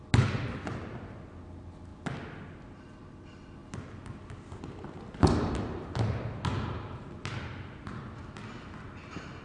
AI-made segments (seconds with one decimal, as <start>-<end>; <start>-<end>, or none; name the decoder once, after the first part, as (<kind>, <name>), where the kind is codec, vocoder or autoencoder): none